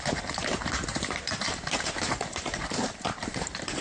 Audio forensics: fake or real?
fake